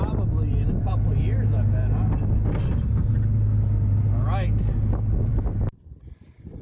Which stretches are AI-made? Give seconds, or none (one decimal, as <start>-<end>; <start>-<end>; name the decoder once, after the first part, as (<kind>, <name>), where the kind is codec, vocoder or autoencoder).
none